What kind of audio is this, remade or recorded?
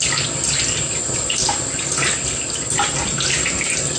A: recorded